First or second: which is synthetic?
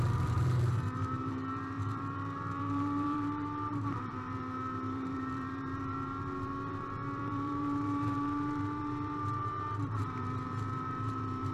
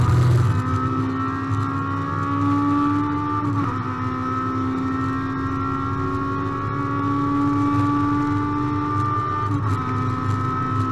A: first